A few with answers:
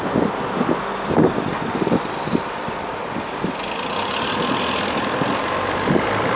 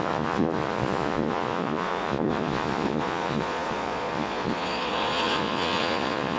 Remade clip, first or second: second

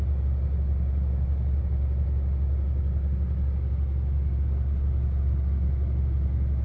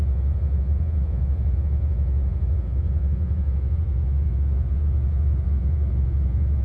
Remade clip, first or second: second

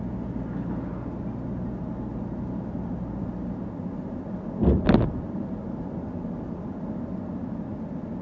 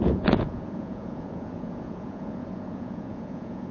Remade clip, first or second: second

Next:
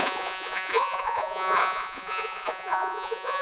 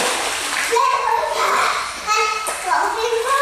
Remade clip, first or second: first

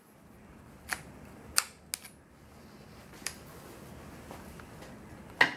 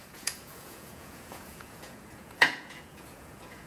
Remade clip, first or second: second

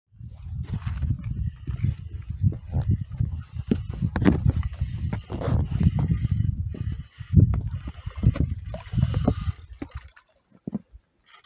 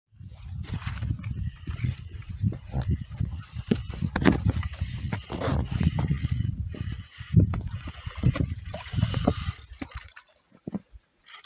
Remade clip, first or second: second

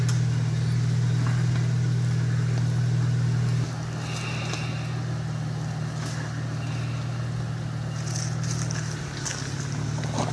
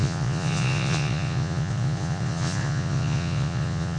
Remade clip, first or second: second